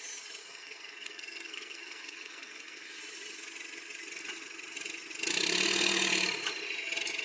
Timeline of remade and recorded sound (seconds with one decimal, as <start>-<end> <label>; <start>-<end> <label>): 0.0-0.4 recorded; 0.4-3.0 remade; 3.0-7.2 recorded